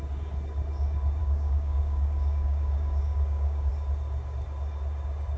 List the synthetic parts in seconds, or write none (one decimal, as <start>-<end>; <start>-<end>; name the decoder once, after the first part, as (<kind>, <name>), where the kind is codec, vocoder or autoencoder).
1.2-3.7 (codec, DAC)